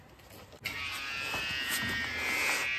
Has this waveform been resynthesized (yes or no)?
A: no